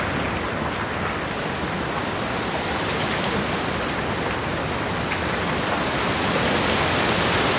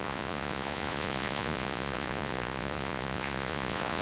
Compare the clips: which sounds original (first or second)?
first